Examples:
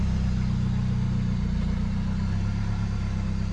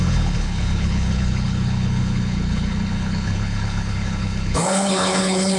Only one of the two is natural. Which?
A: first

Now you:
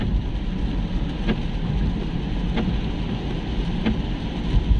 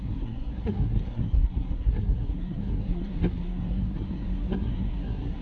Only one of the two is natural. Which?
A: first